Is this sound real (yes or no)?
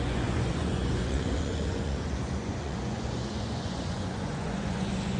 no